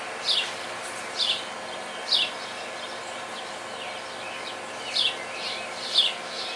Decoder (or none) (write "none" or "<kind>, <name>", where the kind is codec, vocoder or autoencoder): none